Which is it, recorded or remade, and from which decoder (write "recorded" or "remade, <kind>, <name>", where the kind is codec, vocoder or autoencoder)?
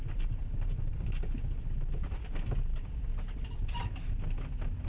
recorded